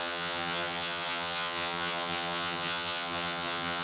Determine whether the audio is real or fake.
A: fake